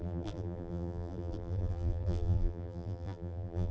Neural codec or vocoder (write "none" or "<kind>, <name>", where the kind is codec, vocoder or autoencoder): vocoder, BigVGAN v2